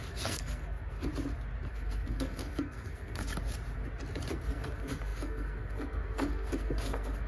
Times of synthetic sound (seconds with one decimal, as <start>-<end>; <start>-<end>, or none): 0.0-1.1; 1.7-3.2; 4.3-7.3